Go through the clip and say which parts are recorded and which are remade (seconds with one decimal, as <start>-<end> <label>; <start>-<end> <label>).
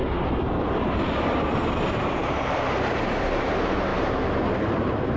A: 0.0-3.9 remade; 3.9-4.5 recorded; 4.5-5.2 remade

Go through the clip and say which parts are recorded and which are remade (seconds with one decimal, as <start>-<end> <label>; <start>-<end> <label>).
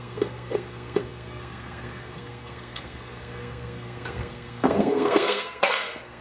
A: 0.0-6.2 remade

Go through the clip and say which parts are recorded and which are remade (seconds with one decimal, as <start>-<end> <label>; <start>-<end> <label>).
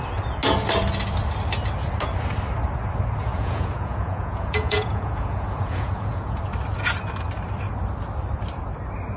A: 0.0-3.2 recorded; 3.2-6.4 remade; 6.4-9.2 recorded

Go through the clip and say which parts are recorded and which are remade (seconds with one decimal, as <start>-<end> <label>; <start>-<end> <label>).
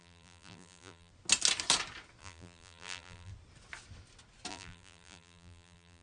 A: 0.0-1.1 remade; 1.1-2.2 recorded; 2.2-3.3 remade; 3.3-4.5 recorded; 4.5-6.0 remade